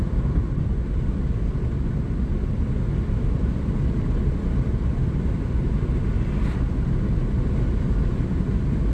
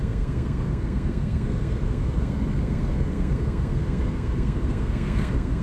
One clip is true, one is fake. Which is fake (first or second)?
second